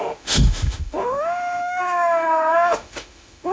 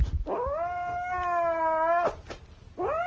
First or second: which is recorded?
second